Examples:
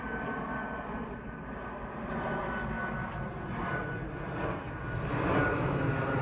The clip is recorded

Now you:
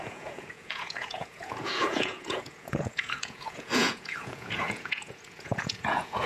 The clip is remade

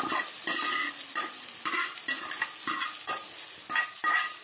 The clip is recorded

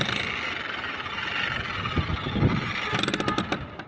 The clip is recorded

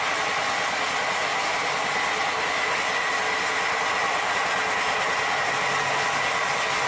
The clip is recorded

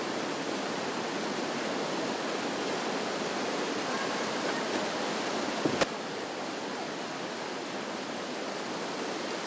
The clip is recorded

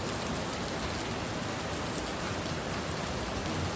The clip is recorded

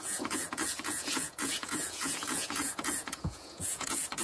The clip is remade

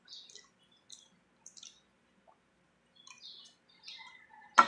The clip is recorded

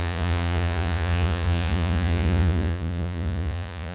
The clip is remade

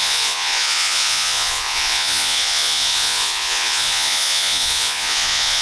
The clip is remade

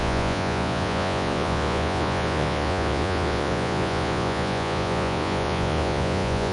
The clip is remade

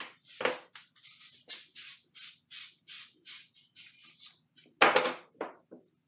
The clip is recorded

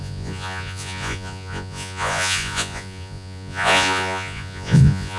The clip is remade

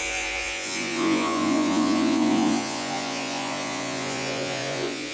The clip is remade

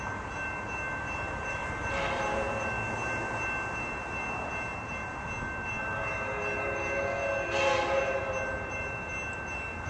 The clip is recorded